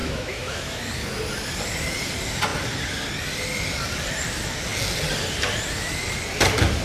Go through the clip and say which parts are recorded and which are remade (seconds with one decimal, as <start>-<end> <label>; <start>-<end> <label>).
0.0-0.8 remade; 0.8-6.8 recorded